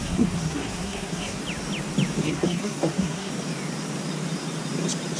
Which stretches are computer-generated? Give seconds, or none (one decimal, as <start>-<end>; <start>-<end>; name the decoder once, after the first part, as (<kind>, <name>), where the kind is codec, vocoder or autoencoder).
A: 0.0-1.4 (codec, SNAC); 2.2-3.3